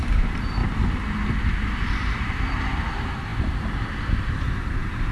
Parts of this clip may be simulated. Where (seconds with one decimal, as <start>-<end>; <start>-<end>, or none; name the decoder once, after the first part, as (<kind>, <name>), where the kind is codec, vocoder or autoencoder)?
0.0-0.6 (vocoder, BigVGAN v2); 1.5-5.1